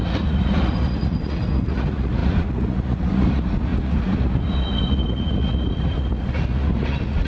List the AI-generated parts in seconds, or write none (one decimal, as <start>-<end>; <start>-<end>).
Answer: 0.0-7.3